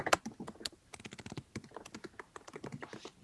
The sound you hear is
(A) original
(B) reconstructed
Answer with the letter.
A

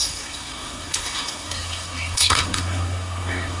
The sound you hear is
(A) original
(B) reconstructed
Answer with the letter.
B